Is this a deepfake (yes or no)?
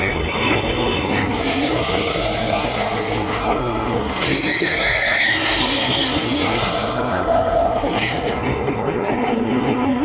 yes